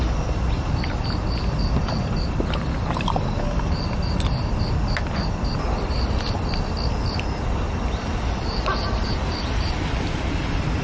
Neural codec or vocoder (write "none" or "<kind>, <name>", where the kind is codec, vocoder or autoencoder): none